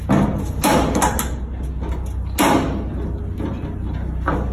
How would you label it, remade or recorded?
recorded